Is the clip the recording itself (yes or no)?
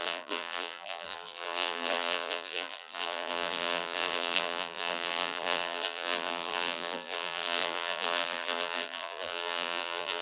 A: no